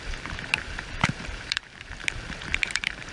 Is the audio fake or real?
fake